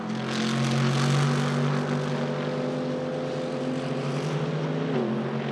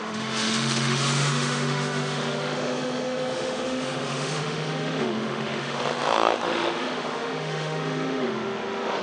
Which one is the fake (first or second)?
second